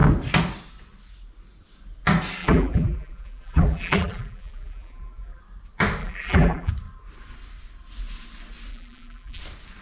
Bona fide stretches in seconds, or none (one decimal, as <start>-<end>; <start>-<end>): 0.0-2.4; 5.4-6.0; 6.7-8.7; 9.4-9.8